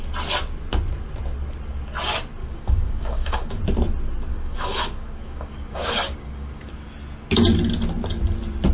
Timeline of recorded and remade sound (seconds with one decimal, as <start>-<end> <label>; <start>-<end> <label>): 0.0-2.4 recorded; 2.4-3.6 remade; 3.6-4.3 recorded; 4.3-6.7 remade; 6.7-8.7 recorded

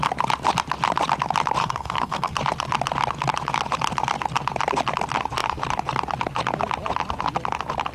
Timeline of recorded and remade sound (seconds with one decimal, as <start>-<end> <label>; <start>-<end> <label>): 0.0-1.6 recorded; 1.6-2.3 remade; 2.3-7.9 recorded

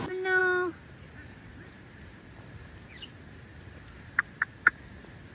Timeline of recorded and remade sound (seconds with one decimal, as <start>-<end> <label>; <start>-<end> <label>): 0.0-5.3 recorded

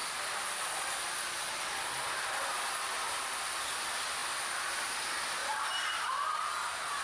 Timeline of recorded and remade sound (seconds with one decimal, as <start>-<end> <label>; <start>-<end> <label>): 0.0-5.4 recorded; 5.4-6.1 remade; 6.1-7.0 recorded

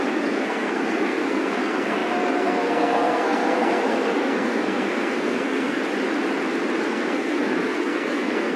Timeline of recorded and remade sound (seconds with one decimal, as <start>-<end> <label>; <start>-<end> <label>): 0.0-5.8 remade; 5.8-6.8 recorded; 6.8-8.6 remade

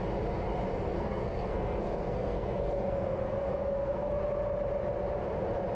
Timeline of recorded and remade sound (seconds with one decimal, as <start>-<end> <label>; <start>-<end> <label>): 0.0-0.7 recorded; 0.7-4.1 remade; 4.1-5.7 recorded

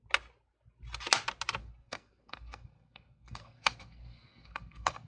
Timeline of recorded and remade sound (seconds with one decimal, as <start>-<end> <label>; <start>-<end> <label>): 0.0-1.6 recorded; 1.6-5.1 remade